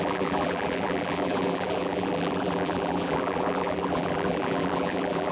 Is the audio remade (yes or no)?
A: yes